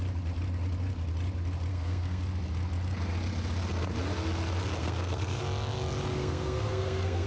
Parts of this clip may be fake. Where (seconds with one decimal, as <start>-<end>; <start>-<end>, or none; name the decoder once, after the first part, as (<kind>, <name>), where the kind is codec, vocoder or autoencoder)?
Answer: 1.7-2.2 (codec, SNAC); 4.8-5.4; 6.2-7.3